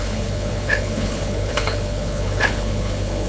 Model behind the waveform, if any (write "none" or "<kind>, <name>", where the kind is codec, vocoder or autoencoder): codec, HILCodec